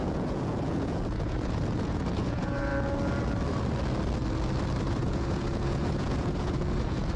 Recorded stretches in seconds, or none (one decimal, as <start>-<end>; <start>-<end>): 2.7-4.9